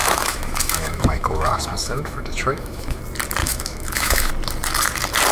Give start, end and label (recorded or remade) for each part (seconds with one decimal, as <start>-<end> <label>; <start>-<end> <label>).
0.0-3.0 remade; 3.0-3.4 recorded; 3.4-4.3 remade; 4.3-5.3 recorded